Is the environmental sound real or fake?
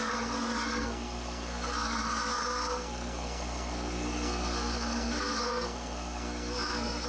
fake